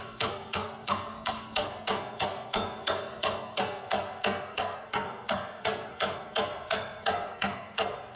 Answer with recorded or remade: remade